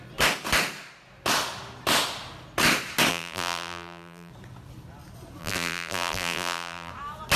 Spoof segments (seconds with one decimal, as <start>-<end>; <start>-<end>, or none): 3.1-4.3; 5.4-6.9